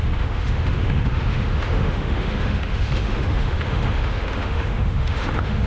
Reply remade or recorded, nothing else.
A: remade